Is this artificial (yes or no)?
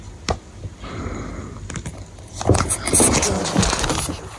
no